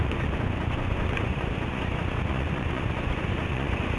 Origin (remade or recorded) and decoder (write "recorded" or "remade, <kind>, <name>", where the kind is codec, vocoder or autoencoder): remade, vocoder, Vocos